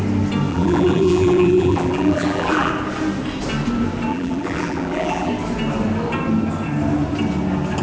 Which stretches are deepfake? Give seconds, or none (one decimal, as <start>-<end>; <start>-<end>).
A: 0.5-2.7; 4.1-5.3